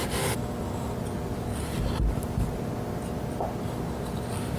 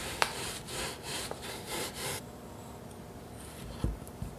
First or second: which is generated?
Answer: second